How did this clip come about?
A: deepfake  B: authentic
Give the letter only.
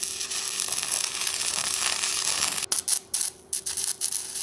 B